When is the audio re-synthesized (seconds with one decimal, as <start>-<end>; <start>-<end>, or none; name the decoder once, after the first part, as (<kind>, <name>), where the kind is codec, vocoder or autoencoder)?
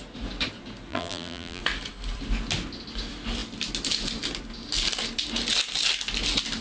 0.9-1.6 (vocoder, BigVGAN v2)